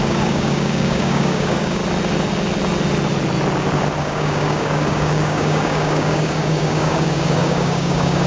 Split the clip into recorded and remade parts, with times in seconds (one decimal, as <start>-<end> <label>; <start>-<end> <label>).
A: 0.0-1.8 remade; 1.8-4.0 recorded; 4.0-8.3 remade